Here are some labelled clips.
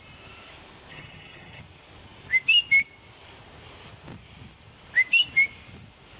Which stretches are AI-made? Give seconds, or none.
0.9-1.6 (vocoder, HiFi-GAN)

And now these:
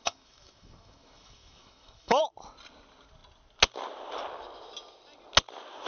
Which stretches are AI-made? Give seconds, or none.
0.0-2.2 (autoencoder, DAC-VAE)

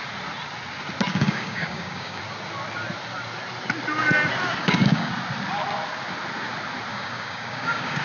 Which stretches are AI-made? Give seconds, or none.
1.1-2.2 (codec, DAC); 4.6-5.1; 6.9-8.0

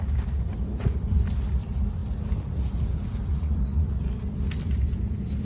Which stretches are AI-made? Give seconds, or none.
3.3-4.0 (vocoder, Vocos)